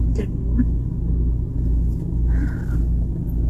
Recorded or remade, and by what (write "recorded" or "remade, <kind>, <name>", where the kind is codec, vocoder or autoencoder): recorded